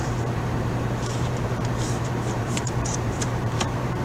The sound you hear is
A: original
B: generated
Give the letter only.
B